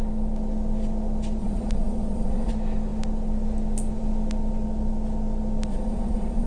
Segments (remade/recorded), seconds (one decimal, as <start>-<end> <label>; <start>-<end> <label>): 0.0-1.4 recorded; 1.4-2.5 remade; 2.5-5.7 recorded; 5.7-6.5 remade